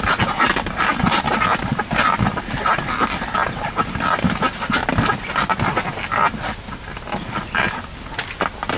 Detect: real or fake real